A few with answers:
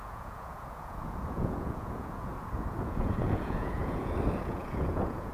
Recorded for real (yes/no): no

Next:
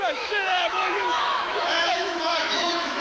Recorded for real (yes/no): no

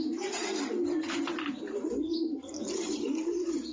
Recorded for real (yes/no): yes